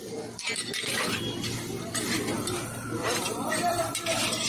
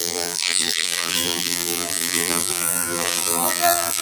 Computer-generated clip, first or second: second